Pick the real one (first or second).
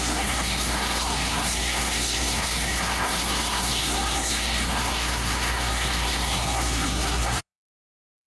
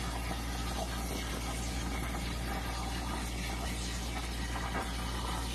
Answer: second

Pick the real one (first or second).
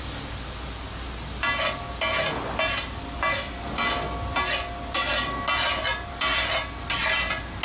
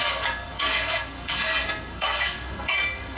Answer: first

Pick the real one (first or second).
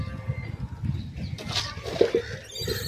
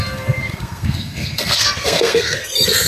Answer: first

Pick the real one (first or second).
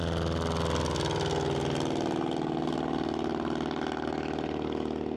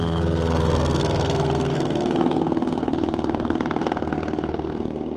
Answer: first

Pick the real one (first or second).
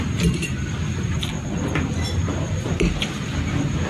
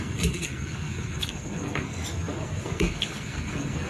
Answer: first